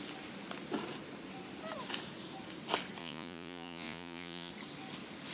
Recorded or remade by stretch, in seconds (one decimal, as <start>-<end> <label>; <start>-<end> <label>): 0.0-3.0 recorded; 3.0-4.5 remade; 4.5-5.3 recorded

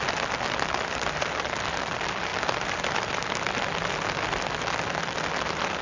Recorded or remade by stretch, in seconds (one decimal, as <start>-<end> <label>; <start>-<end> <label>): 0.0-5.8 recorded